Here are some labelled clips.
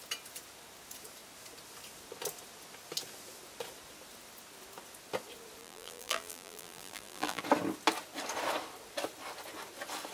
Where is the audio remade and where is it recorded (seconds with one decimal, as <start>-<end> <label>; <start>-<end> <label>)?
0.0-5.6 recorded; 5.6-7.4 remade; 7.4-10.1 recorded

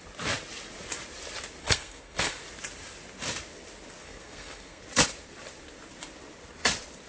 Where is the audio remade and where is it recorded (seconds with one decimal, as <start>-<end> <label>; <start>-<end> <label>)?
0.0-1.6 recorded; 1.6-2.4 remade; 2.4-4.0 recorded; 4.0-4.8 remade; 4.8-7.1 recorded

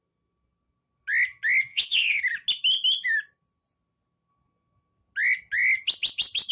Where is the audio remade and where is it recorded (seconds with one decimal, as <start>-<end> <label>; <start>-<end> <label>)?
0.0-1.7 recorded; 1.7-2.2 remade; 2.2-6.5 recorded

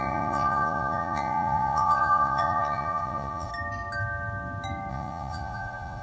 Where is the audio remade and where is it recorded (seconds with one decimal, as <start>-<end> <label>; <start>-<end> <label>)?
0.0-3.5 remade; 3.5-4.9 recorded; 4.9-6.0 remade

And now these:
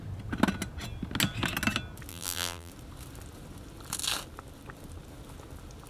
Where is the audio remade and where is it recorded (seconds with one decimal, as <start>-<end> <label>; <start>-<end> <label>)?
0.0-2.1 recorded; 2.1-2.7 remade; 2.7-5.9 recorded

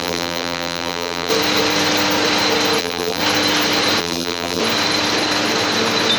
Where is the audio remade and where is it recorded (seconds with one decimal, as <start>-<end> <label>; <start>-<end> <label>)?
0.0-1.3 remade; 1.3-2.8 recorded; 2.8-3.2 remade; 3.2-4.0 recorded; 4.0-4.6 remade; 4.6-6.2 recorded